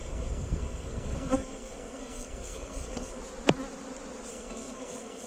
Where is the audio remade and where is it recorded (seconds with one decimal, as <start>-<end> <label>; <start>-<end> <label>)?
0.0-3.2 remade; 3.2-4.3 recorded; 4.3-5.3 remade